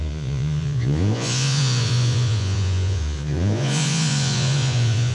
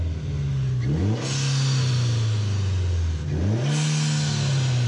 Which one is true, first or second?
second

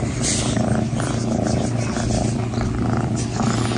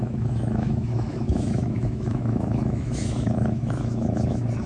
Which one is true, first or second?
first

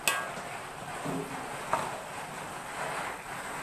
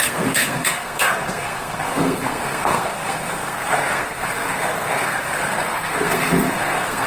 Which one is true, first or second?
first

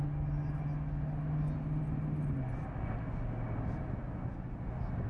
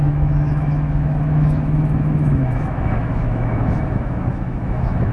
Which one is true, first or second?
first